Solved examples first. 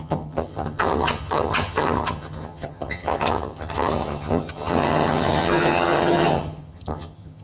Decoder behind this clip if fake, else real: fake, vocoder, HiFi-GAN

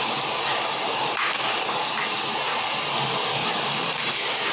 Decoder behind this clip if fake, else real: real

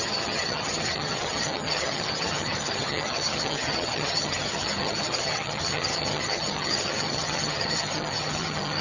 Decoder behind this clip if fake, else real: fake, vocoder, HiFi-GAN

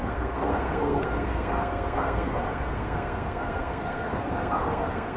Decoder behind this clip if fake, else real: fake, codec, SNAC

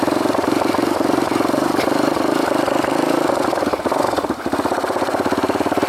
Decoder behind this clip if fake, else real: fake, vocoder, BigVGAN v2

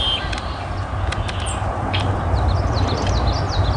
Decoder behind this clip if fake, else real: real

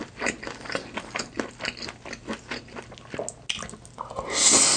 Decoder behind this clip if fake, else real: real